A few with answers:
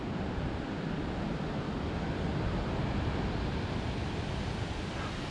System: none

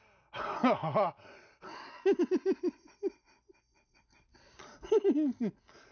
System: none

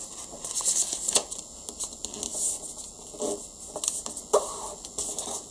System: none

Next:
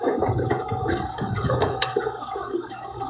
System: codec, DAC